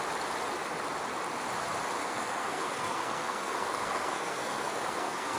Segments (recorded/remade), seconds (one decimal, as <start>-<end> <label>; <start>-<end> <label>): 0.0-2.0 recorded; 2.0-5.4 remade